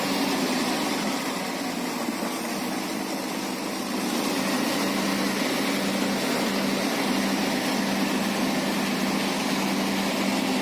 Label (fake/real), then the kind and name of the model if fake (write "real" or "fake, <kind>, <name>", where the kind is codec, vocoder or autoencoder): real